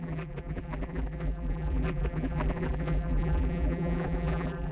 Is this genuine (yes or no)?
no